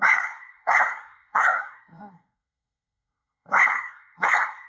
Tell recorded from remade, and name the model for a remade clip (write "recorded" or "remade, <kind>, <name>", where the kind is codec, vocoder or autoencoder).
remade, codec, SNAC